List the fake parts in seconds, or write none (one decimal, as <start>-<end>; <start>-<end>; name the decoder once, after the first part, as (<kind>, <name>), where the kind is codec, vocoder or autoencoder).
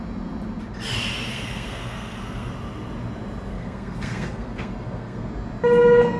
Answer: 1.3-2.5 (codec, SNAC); 3.5-5.3